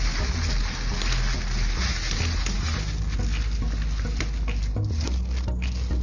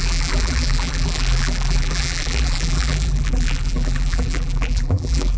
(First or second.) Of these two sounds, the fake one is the second